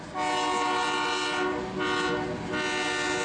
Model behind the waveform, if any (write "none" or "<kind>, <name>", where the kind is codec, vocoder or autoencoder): none